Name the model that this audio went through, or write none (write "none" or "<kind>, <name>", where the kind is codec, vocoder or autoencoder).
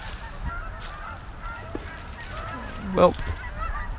none